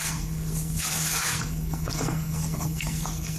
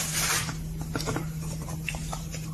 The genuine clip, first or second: second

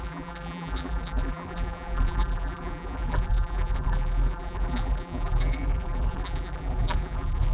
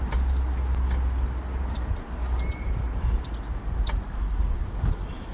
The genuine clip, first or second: second